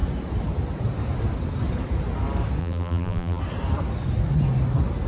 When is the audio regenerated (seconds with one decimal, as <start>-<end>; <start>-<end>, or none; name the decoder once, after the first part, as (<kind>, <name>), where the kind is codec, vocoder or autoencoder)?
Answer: 2.6-3.4 (vocoder, BigVGAN v2)